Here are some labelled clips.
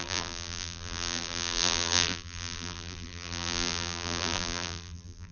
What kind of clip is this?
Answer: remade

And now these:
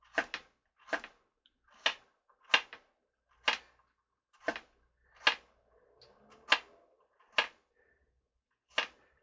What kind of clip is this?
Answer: recorded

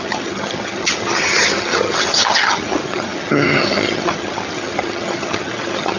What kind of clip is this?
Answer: remade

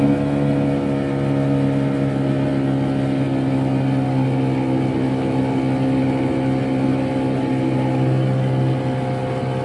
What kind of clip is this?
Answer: recorded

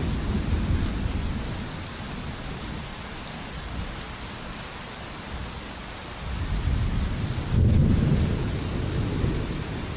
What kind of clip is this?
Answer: recorded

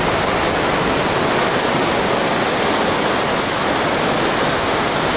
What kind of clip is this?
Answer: recorded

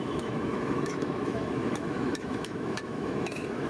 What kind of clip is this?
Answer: remade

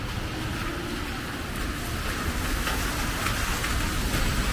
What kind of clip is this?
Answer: recorded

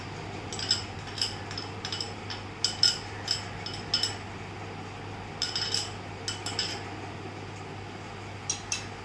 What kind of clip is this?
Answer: recorded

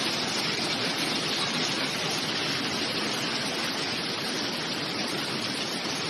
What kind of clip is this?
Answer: recorded